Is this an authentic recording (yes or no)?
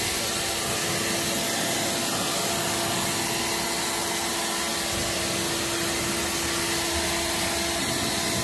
yes